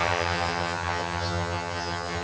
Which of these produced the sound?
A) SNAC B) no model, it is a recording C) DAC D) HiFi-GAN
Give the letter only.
D